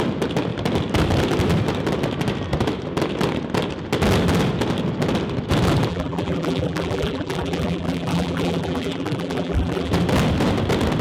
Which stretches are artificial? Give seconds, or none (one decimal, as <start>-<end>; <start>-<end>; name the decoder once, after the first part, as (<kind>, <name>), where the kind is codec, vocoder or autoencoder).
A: 5.9-9.9 (vocoder, BigVGAN v2)